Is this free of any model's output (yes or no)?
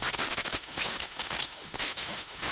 no